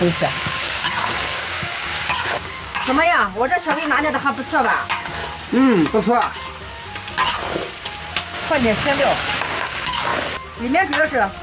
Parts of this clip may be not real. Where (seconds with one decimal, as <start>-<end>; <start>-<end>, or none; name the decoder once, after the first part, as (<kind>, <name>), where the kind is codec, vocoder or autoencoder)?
0.0-5.2 (codec, DAC); 8.4-10.1